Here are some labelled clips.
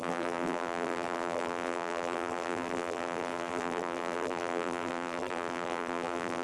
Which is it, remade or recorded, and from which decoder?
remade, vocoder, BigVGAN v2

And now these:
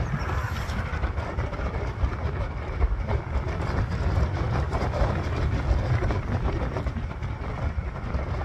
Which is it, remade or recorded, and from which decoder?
remade, vocoder, BigVGAN v2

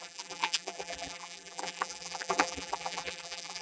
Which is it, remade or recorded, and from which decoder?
remade, vocoder, BigVGAN v2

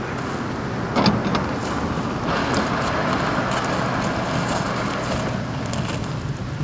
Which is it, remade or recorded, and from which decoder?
recorded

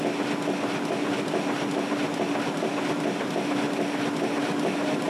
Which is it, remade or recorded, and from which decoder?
recorded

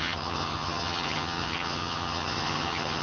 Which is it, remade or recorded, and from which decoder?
remade, vocoder, HiFi-GAN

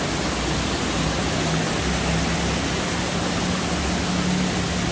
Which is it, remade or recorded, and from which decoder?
recorded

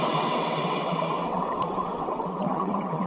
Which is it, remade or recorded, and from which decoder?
remade, vocoder, WaveNeXt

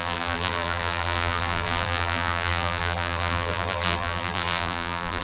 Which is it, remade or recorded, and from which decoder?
remade, vocoder, BigVGAN v2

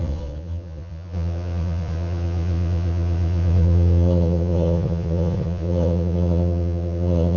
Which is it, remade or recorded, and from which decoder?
remade, vocoder, Vocos